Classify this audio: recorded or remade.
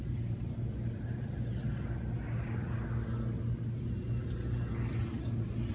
recorded